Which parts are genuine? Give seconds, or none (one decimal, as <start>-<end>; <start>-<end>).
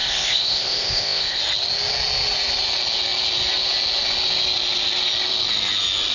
1.4-6.1